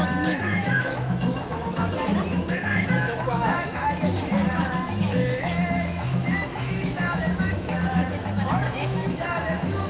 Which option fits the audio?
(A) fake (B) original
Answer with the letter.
A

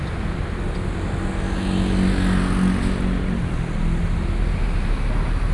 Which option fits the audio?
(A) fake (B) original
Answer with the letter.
B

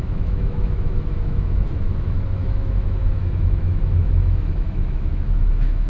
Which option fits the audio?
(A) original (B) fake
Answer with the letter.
B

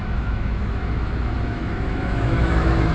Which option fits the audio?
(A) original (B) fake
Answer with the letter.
B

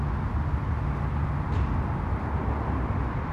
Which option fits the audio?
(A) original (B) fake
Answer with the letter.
A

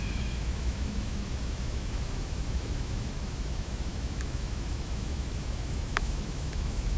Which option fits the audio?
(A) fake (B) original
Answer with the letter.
A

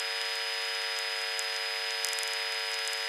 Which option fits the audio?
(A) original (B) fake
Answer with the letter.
A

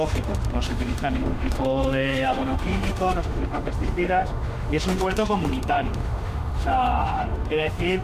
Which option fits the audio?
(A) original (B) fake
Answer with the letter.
B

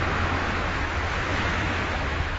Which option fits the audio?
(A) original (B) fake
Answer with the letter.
B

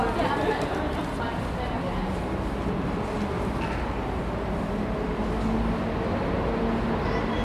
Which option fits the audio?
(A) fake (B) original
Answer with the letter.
B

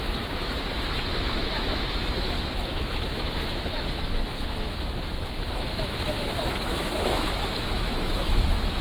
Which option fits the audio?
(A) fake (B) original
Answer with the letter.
A